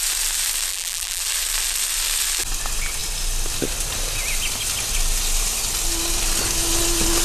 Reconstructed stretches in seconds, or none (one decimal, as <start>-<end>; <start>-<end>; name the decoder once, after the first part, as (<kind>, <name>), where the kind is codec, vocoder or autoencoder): 0.7-1.2 (vocoder, BigVGAN v2)